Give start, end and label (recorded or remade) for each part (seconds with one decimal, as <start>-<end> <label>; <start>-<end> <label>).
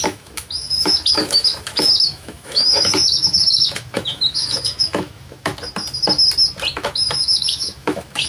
0.0-5.5 remade; 5.5-6.7 recorded; 6.7-8.3 remade